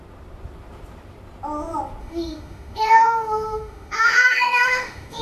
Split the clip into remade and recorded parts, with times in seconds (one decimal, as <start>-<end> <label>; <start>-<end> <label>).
0.0-2.0 recorded; 2.0-5.2 remade